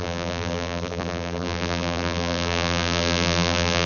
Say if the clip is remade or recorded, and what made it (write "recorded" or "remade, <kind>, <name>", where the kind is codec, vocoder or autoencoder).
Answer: remade, vocoder, BigVGAN v2